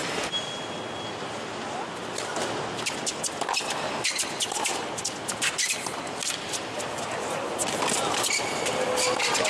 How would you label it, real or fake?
real